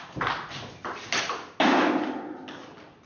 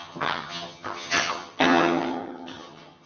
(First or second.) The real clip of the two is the first